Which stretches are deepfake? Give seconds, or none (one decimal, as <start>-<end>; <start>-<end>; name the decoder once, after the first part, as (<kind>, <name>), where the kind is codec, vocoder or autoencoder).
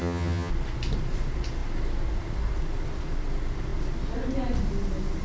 0.0-0.5 (vocoder, HiFi-GAN)